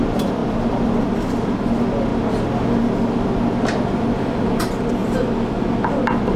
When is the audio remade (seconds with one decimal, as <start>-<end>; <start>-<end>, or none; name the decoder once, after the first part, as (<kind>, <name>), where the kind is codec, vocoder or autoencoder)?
0.0-2.1 (vocoder, BigVGAN v2); 3.1-5.0